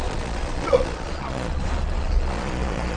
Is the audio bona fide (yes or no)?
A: no